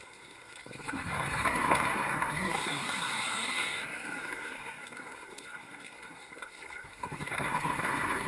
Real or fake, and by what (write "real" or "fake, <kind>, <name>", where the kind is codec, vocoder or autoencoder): fake, codec, SNAC